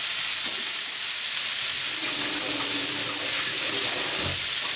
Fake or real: real